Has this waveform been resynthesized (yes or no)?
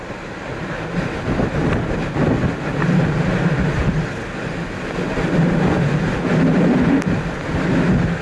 no